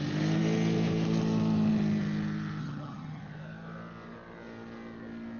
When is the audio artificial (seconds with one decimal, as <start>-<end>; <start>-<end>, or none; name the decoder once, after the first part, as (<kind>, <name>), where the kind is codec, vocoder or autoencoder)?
2.6-3.2 (vocoder, HiFi-GAN)